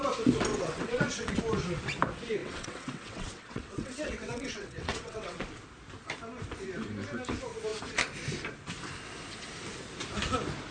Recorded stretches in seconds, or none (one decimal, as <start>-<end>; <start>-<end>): 0.0-0.5; 1.4-2.4; 5.4-10.7